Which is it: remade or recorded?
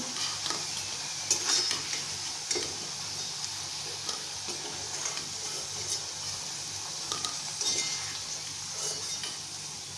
recorded